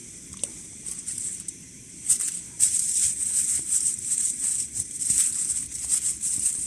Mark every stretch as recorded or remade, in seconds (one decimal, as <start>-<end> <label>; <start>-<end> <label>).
0.0-0.6 recorded; 0.6-6.7 remade